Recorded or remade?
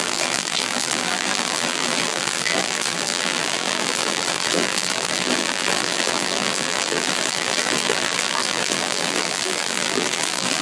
remade